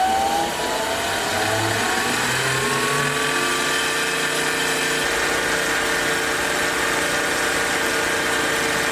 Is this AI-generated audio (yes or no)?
no